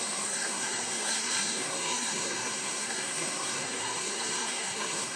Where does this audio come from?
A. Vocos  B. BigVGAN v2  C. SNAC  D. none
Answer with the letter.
C